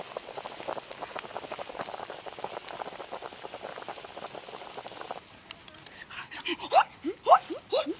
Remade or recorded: recorded